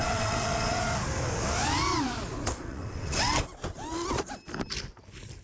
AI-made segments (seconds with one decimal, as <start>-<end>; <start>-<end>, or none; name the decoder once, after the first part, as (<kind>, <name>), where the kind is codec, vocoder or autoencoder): 0.0-0.8 (vocoder, WaveNeXt); 2.7-3.4